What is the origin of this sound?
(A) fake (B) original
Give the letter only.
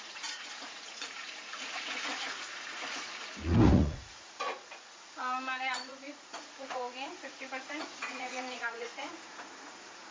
A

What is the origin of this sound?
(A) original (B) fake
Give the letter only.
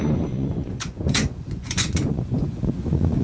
B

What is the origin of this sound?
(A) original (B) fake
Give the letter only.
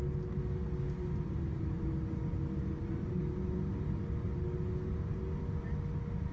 A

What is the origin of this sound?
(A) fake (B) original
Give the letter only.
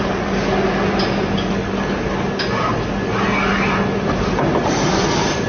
B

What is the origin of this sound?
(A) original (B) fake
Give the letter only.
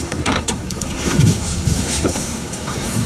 B